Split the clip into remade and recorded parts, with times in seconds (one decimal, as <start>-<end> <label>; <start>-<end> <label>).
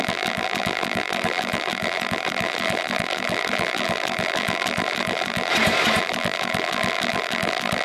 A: 0.0-5.5 remade; 5.5-6.0 recorded; 6.0-7.8 remade